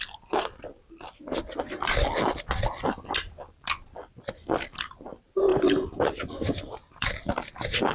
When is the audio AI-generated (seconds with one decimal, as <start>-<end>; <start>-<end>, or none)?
5.5-7.1